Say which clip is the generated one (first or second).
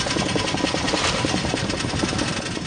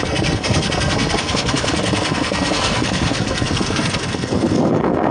second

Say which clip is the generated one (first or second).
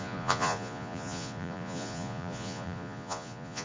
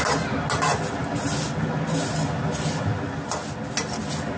first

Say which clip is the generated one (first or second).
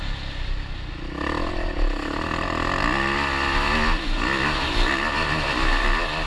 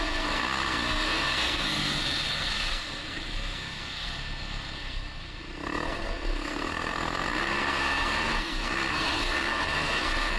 second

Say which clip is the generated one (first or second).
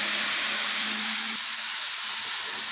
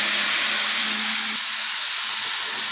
first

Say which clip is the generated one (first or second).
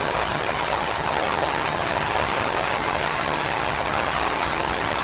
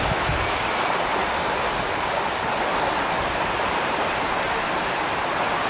first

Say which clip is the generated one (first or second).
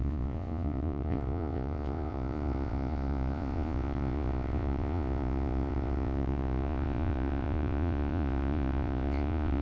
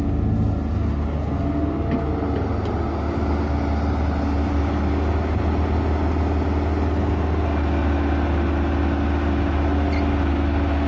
first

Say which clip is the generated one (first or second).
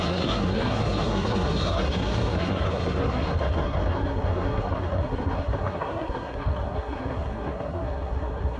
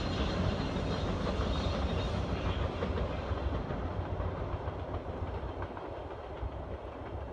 first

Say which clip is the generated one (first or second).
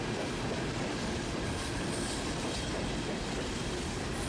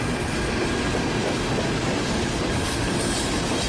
first